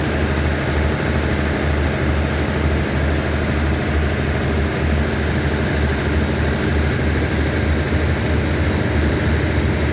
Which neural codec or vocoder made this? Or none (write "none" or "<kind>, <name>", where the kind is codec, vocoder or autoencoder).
none